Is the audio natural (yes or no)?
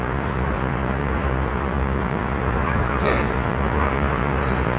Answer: no